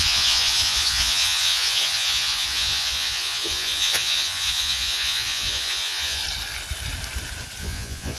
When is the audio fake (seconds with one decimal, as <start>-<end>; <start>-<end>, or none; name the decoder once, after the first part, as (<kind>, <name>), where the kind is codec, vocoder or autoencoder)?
0.0-6.2 (vocoder, Vocos); 7.6-8.2

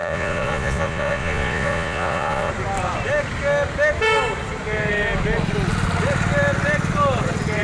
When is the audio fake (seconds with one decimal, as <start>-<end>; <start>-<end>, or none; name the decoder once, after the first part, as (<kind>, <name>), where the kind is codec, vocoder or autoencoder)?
0.0-2.5 (vocoder, Vocos)

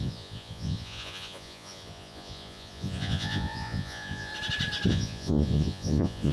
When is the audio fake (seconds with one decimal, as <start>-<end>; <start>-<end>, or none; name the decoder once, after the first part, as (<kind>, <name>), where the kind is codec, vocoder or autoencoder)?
0.0-4.3 (vocoder, Vocos); 4.9-6.3

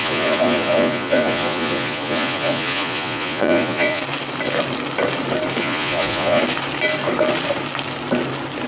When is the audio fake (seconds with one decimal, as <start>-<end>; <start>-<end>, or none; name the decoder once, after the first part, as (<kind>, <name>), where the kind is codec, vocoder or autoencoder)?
0.0-4.0 (vocoder, Vocos); 5.6-6.4

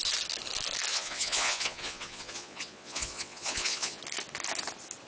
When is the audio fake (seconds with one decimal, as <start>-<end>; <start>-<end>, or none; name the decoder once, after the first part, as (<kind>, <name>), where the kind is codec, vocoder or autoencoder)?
0.9-4.0 (vocoder, Vocos)

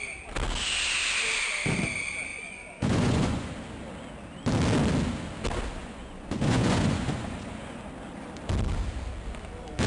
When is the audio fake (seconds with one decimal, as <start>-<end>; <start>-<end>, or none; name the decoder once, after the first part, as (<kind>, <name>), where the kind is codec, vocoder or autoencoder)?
2.3-3.5 (vocoder, Vocos); 5.8-7.8

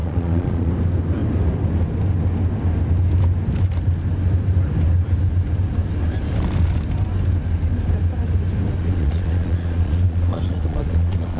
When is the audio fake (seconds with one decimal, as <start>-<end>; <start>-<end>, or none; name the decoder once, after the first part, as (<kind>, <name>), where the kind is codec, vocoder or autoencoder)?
0.0-0.7 (vocoder, Vocos); 8.8-11.4